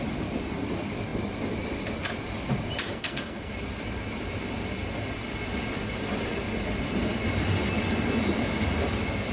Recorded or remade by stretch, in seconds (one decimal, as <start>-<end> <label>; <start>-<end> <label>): 0.0-2.9 recorded; 2.9-3.5 remade; 3.5-9.3 recorded